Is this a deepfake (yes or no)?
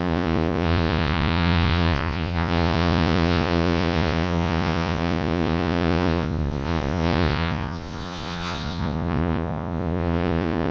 yes